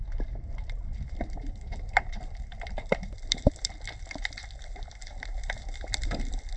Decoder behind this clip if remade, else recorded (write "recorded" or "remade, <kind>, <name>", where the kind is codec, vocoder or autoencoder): remade, vocoder, BigVGAN v2